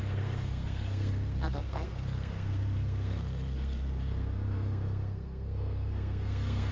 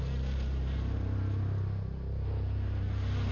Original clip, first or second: second